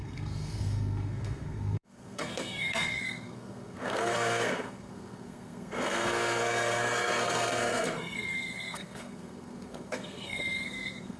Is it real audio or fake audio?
fake